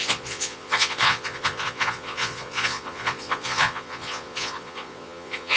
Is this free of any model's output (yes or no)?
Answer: no